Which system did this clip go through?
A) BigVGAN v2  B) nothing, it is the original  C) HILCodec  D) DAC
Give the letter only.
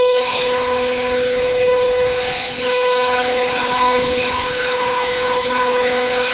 C